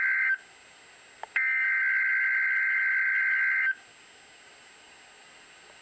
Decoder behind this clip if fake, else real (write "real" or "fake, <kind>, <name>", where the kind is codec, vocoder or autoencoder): real